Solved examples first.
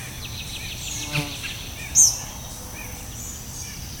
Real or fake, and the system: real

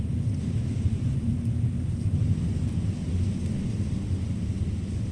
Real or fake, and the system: real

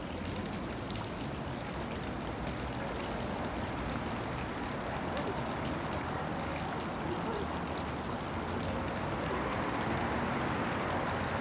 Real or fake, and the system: real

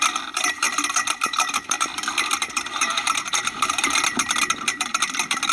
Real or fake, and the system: fake, vocoder, BigVGAN v2